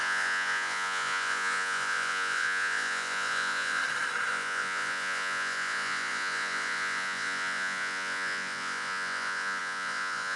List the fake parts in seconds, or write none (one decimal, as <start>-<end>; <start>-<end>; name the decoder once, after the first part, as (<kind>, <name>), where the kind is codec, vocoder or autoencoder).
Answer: 0.0-3.8 (vocoder, Vocos); 4.3-10.4